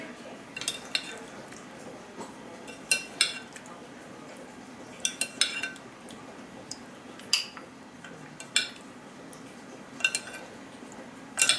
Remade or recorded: recorded